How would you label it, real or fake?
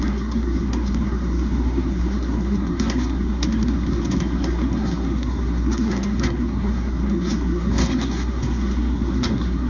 fake